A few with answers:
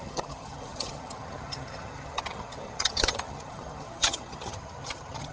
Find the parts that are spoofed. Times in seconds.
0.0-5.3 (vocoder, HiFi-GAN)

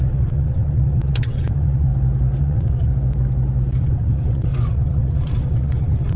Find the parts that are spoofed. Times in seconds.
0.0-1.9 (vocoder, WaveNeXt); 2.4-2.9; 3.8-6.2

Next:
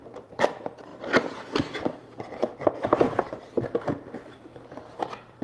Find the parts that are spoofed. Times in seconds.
0.0-5.4 (vocoder, BigVGAN v2)

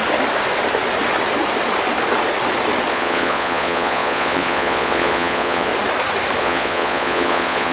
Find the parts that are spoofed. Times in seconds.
2.9-5.7 (vocoder, Vocos); 6.4-7.7